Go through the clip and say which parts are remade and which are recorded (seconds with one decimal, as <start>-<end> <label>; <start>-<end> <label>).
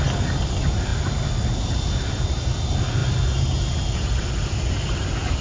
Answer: 0.0-0.9 remade; 0.9-2.1 recorded; 2.1-3.0 remade; 3.0-4.8 recorded; 4.8-5.4 remade